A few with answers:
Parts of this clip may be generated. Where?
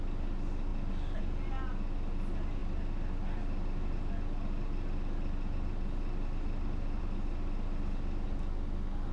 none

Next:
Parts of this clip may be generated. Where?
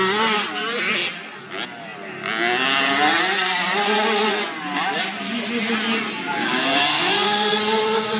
6.9-7.6 (codec, SNAC)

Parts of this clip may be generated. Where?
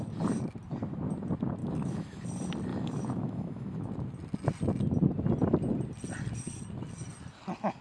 1.6-2.2 (autoencoder, DAC-VAE); 2.7-3.9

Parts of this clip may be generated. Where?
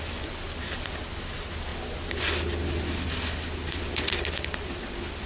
none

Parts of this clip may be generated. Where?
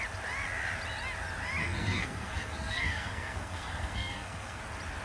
1.6-4.6 (codec, SNAC)